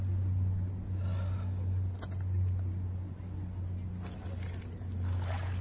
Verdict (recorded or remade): recorded